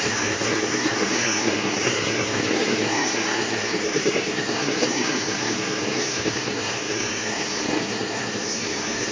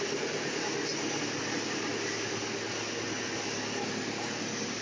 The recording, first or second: second